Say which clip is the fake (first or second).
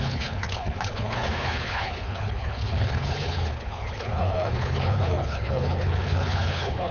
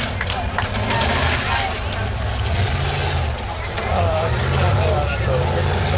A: first